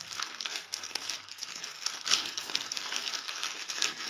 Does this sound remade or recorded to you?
remade